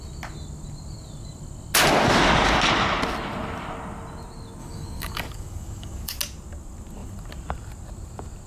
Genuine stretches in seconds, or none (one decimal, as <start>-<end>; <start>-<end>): 0.0-4.6; 6.2-8.5